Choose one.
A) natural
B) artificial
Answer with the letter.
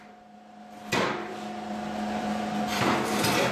B